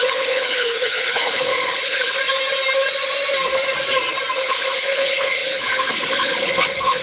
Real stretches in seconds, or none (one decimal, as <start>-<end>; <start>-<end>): 2.2-4.4